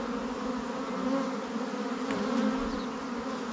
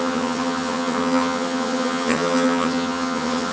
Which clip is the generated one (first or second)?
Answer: second